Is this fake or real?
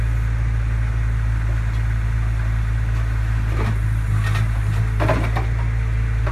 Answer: real